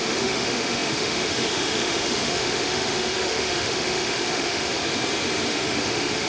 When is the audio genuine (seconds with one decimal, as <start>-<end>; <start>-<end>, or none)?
4.8-5.5